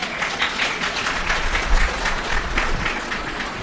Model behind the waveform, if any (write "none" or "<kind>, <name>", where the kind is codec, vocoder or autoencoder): vocoder, Vocos